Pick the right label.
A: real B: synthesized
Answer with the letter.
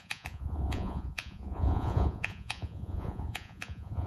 B